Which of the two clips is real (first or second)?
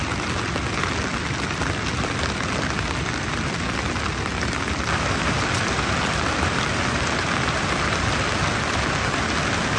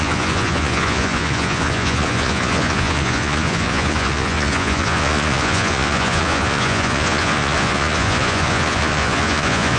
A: first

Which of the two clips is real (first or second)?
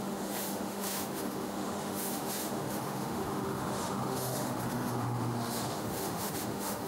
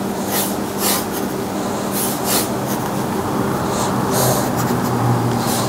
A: second